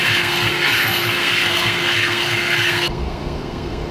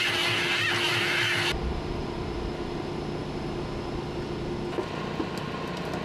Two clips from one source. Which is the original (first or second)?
second